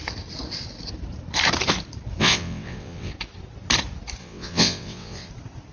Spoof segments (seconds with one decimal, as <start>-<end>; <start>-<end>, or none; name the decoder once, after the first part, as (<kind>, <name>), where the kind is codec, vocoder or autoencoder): 2.2-3.1 (vocoder, WaveNeXt); 4.2-5.3